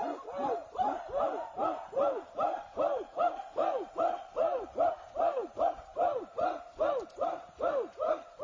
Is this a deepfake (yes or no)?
yes